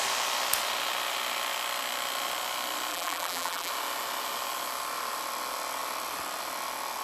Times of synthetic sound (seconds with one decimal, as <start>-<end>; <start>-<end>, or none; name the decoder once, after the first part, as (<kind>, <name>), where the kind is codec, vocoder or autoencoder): 2.9-3.7 (vocoder, BigVGAN v2)